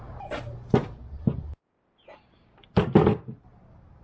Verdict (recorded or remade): remade